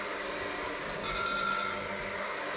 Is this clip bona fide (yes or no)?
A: yes